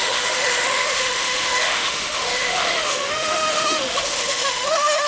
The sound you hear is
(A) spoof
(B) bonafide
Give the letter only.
A